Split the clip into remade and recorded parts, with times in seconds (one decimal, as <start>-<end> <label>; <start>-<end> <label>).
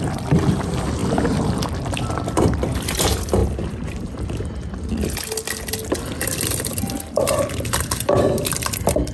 0.0-3.4 remade; 3.4-6.1 recorded; 6.1-9.1 remade